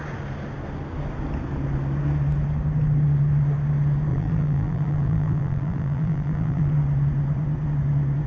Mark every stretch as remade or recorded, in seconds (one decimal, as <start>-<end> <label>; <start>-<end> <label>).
0.0-4.1 recorded; 4.1-6.7 remade; 6.7-8.3 recorded